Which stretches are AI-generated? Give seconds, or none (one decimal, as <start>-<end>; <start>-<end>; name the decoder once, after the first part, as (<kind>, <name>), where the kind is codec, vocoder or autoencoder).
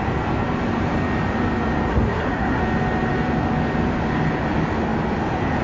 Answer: 1.9-2.6 (codec, SNAC)